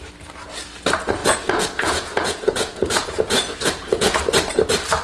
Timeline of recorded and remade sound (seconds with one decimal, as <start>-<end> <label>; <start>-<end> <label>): 0.0-1.2 recorded; 1.2-4.2 remade; 4.2-5.0 recorded